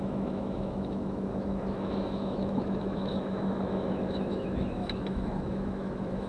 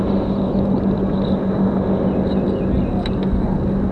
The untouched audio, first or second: second